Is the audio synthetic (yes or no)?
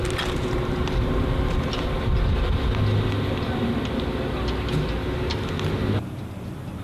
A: no